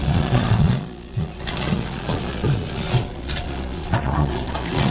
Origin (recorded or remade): remade